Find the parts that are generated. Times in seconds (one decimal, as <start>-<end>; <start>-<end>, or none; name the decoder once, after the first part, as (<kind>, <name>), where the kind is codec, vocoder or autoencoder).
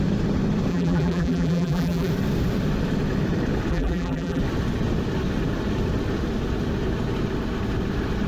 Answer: 0.7-2.1 (vocoder, BigVGAN v2); 3.7-4.4